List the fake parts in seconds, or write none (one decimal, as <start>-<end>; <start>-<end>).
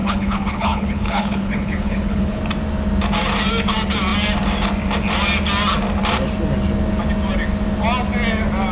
0.0-2.4